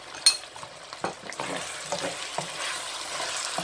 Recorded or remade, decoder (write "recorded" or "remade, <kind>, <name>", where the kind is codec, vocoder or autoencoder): recorded